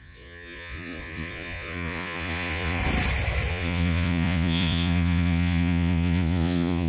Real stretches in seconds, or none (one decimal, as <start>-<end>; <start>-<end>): 2.8-3.5